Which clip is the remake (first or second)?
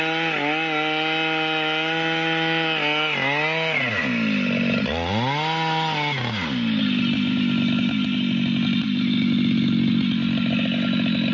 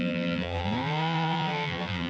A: second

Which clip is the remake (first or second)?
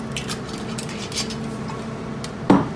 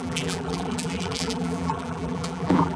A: second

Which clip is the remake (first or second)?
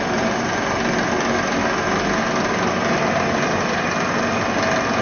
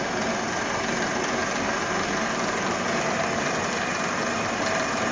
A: second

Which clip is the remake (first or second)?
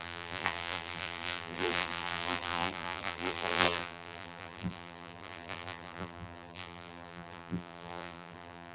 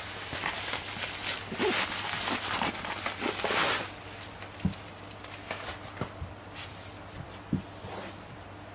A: first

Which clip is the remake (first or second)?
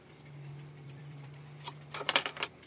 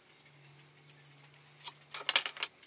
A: first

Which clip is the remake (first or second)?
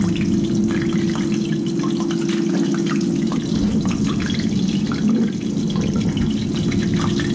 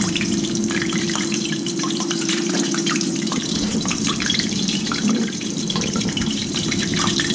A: second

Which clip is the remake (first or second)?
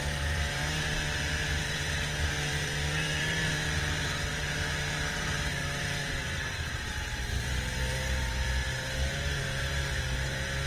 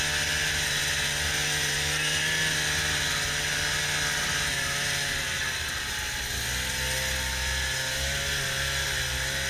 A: first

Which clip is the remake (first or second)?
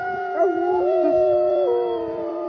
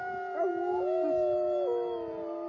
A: first